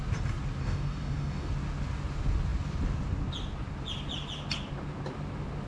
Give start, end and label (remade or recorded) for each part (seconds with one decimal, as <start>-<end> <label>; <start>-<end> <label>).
0.0-0.6 recorded; 0.6-1.5 remade; 1.5-5.7 recorded